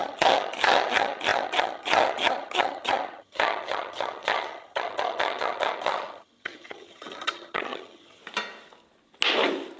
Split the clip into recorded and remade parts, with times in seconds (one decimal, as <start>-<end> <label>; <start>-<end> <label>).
0.0-8.2 remade; 8.2-9.8 recorded